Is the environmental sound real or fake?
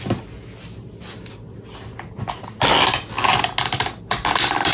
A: real